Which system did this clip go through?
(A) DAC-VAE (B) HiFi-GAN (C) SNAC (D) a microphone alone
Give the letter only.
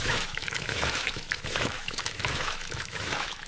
A